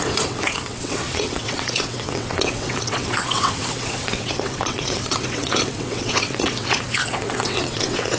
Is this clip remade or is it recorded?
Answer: remade